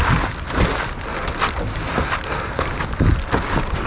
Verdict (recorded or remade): recorded